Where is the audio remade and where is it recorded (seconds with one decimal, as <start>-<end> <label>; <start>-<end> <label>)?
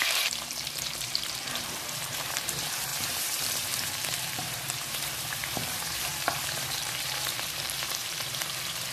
0.0-8.9 remade